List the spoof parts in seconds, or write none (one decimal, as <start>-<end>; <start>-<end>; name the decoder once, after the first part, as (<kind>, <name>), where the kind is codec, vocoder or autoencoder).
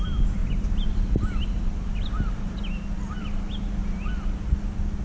none